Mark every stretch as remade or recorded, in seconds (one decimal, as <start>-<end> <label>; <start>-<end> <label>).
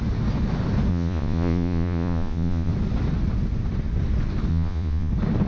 0.0-0.9 recorded; 0.9-2.7 remade; 2.7-4.5 recorded; 4.5-5.1 remade; 5.1-5.5 recorded